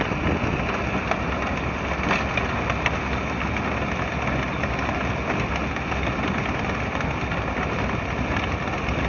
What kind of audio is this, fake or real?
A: real